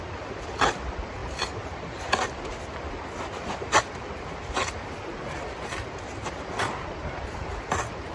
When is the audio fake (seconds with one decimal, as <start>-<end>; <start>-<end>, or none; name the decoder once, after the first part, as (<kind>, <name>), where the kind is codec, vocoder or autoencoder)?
none